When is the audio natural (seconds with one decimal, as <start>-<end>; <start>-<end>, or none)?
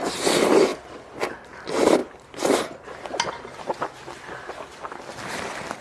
0.0-5.8